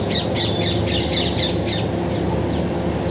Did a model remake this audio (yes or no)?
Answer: no